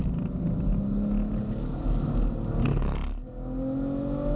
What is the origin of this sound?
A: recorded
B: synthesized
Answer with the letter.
A